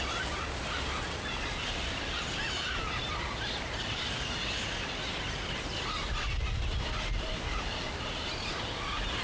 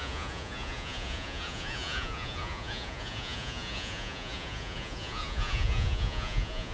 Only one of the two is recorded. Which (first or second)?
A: first